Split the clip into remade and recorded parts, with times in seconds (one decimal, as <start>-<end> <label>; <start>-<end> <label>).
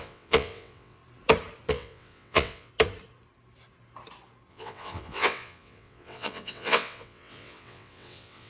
0.0-1.0 remade; 1.0-1.7 recorded; 1.7-2.7 remade; 2.7-4.5 recorded; 4.5-8.5 remade